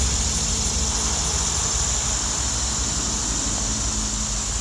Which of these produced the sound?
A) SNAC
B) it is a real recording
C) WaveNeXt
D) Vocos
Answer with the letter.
B